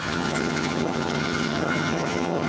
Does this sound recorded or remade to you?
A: remade